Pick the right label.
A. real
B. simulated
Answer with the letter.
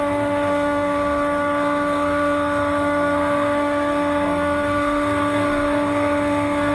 B